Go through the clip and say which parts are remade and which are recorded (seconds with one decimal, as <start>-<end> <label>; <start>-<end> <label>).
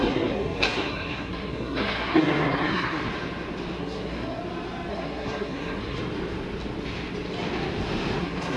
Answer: 0.0-3.1 remade; 3.1-3.8 recorded; 3.8-4.4 remade; 4.4-4.9 recorded; 4.9-6.0 remade; 6.0-8.2 recorded; 8.2-8.6 remade